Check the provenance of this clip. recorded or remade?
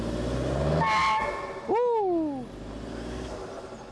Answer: recorded